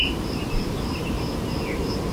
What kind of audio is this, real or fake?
fake